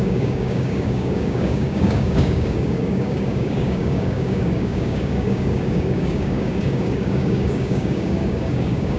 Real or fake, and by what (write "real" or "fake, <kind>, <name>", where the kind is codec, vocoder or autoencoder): fake, codec, DAC